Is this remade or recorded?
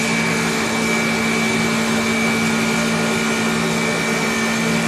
recorded